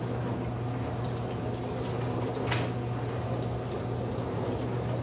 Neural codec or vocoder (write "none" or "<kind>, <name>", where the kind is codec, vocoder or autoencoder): none